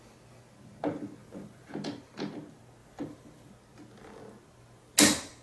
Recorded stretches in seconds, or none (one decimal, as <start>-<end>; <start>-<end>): 0.0-1.2; 1.7-2.8; 3.5-5.4